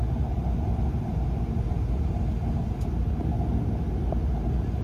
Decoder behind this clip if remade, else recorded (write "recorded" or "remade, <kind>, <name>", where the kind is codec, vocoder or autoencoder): recorded